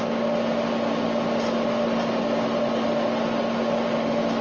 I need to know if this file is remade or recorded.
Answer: recorded